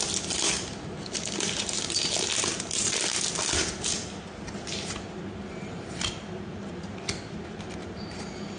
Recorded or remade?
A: recorded